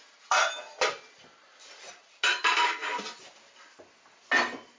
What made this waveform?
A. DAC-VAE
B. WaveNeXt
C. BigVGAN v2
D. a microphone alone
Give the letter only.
D